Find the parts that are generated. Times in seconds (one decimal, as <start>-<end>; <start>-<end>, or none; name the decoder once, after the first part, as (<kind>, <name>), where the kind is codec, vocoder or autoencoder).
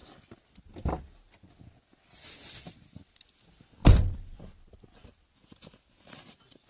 none